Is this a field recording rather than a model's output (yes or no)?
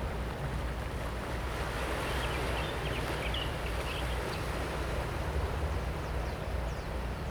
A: yes